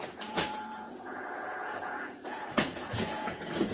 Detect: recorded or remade remade